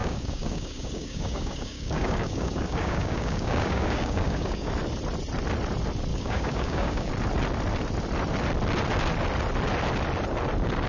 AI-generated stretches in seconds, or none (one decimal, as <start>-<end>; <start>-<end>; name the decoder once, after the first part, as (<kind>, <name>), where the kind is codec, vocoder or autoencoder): 0.0-4.7 (codec, DAC); 6.1-7.1